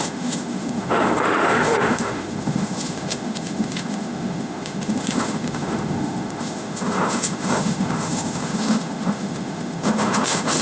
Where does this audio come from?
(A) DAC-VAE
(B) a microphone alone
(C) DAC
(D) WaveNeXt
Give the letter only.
A